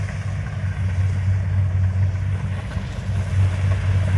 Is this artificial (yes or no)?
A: no